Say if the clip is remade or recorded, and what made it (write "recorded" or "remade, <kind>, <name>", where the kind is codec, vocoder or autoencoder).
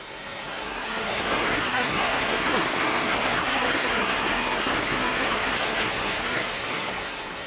remade, codec, SNAC